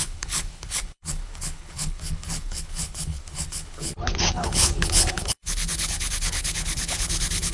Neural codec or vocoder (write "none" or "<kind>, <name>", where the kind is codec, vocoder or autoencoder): codec, HILCodec